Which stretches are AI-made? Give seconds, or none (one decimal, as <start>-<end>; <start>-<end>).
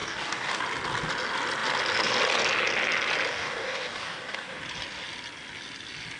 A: 0.0-0.6; 3.3-4.6